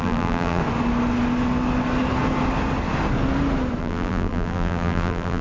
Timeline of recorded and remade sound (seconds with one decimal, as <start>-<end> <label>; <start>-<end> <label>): 0.0-0.6 remade; 0.6-3.8 recorded; 3.8-5.4 remade